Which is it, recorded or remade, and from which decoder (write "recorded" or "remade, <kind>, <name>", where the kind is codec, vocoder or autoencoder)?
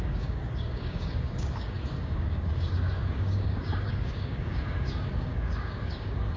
remade, codec, DAC